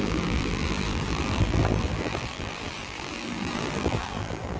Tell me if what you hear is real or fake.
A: fake